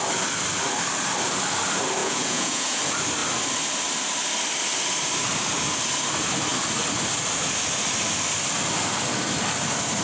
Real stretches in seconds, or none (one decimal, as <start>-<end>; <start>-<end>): 0.0-2.0; 2.8-10.0